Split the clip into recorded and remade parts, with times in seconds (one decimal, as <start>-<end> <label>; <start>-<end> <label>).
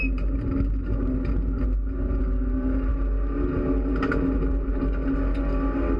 0.0-6.0 recorded